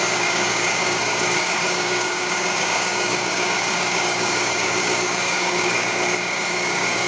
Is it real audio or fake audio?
fake